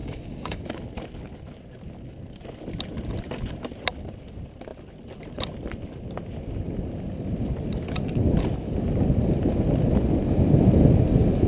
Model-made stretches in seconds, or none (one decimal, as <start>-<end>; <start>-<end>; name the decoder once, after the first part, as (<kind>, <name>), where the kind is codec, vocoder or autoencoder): 0.0-0.6 (codec, DAC)